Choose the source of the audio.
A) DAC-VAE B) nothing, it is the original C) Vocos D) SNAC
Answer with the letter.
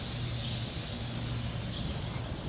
B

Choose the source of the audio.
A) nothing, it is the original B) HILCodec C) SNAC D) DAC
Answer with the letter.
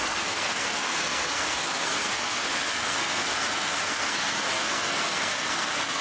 C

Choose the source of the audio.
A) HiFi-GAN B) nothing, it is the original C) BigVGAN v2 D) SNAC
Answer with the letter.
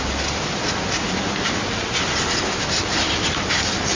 B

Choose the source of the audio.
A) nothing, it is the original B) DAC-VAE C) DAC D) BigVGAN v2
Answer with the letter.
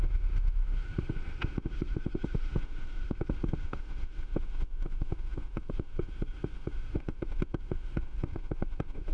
B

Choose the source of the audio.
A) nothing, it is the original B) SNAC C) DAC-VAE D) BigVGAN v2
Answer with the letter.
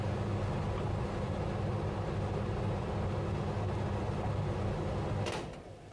A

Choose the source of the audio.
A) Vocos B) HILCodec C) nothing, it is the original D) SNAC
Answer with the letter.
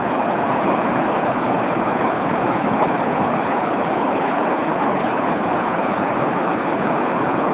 B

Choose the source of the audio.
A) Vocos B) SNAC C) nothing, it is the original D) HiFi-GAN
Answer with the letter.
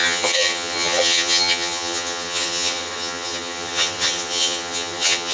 D